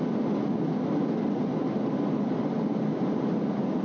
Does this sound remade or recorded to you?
recorded